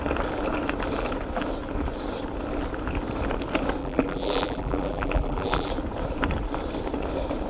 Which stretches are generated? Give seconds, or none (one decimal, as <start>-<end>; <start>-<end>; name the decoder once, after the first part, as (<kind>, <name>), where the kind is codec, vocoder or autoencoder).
3.8-5.7 (vocoder, BigVGAN v2)